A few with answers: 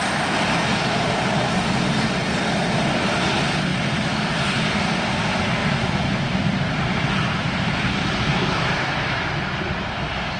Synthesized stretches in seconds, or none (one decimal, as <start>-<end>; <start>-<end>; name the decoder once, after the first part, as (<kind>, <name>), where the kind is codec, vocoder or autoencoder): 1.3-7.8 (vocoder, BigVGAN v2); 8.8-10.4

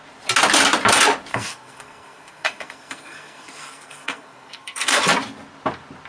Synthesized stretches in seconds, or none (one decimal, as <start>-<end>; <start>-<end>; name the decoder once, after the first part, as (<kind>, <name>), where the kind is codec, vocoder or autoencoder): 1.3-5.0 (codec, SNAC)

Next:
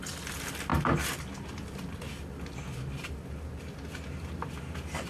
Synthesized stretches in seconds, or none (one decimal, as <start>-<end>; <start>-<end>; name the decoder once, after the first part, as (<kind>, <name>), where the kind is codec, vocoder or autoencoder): none

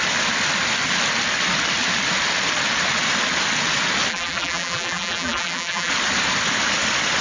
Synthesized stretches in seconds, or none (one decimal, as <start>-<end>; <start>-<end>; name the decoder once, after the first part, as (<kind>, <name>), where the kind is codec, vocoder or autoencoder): 4.1-5.9 (vocoder, BigVGAN v2)

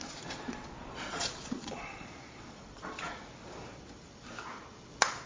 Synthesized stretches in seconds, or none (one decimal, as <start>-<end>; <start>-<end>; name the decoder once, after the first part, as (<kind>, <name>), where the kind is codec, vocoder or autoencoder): 0.0-3.2 (vocoder, Vocos)

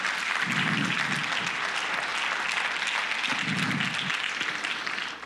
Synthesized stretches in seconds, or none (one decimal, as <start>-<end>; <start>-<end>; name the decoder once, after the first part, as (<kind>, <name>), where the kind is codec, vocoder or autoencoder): none